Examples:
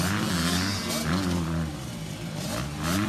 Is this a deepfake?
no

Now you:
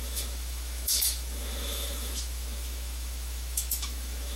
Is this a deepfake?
yes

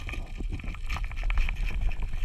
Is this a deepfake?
no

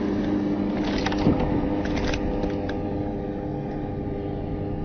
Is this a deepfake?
no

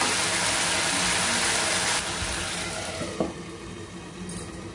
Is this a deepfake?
no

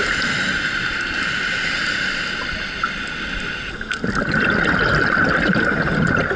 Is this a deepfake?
no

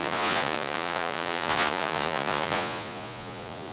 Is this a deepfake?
yes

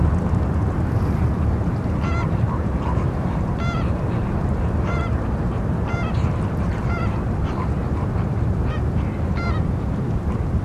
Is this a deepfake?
yes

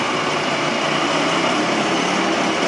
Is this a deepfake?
yes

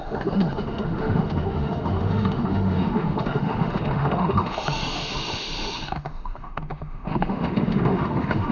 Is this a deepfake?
yes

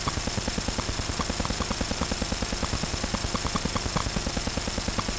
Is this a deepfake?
no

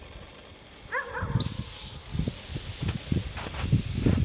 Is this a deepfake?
no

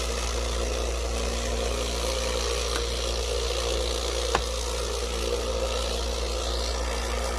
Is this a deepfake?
no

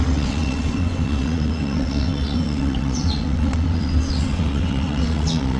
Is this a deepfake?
yes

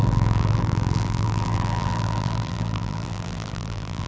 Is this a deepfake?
yes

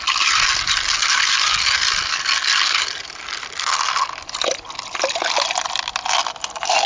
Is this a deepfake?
no